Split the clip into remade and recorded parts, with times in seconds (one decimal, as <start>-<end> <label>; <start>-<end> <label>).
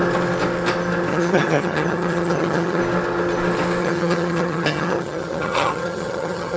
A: 0.0-1.1 recorded; 1.1-2.8 remade; 2.8-3.8 recorded; 3.8-6.6 remade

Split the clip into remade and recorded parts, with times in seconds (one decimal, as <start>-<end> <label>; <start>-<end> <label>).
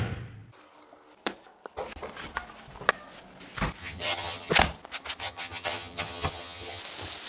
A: 0.0-3.8 recorded; 3.8-4.5 remade; 4.5-5.2 recorded; 5.2-6.8 remade; 6.8-7.3 recorded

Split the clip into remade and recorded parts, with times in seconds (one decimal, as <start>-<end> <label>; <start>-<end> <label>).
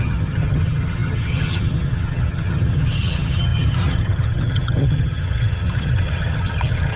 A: 0.0-7.0 remade